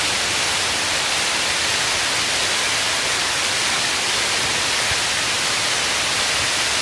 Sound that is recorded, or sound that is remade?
recorded